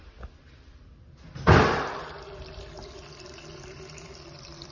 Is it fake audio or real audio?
fake